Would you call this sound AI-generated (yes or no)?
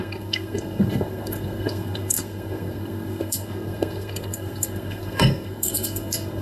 yes